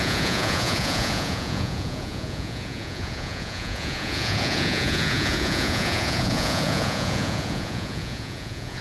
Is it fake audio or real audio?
fake